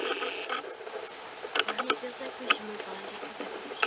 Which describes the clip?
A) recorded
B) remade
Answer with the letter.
A